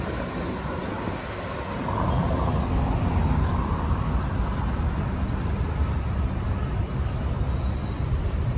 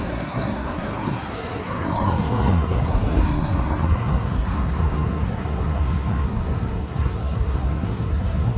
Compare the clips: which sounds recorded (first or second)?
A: first